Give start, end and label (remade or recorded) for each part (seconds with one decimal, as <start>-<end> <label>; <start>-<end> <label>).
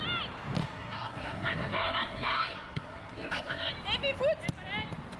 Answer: 0.0-0.6 recorded; 0.6-3.7 remade; 3.7-5.2 recorded